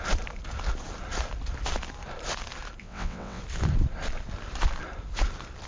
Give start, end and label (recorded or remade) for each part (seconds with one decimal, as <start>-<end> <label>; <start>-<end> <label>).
0.0-2.8 recorded; 2.8-3.4 remade; 3.4-5.7 recorded